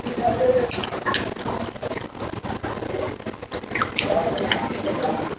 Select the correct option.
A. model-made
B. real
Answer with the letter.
B